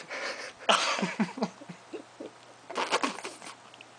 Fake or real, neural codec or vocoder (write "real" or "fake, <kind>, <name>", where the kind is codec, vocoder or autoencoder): real